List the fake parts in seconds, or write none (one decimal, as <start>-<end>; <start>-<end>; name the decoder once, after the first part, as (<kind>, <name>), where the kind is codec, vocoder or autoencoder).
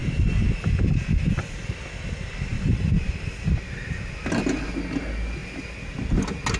none